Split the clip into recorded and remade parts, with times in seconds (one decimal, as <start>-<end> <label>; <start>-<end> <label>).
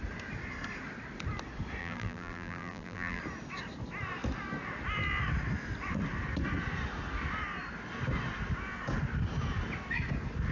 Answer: 0.0-1.8 recorded; 1.8-3.2 remade; 3.2-10.5 recorded